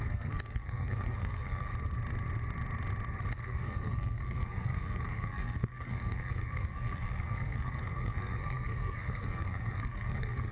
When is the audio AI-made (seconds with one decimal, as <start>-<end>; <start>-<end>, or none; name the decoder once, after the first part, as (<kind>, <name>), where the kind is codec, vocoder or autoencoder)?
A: 0.0-1.7 (codec, SNAC); 3.4-10.5